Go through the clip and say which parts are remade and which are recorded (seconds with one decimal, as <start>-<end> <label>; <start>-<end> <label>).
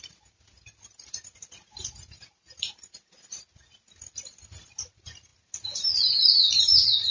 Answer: 0.0-7.1 recorded